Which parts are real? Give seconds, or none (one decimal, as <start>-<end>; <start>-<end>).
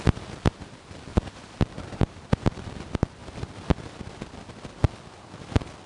0.0-1.1; 2.8-5.9